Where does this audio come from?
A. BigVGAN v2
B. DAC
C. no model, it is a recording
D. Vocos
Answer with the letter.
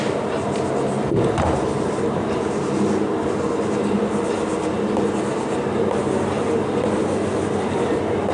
C